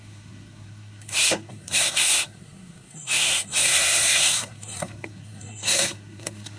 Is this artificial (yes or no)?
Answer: yes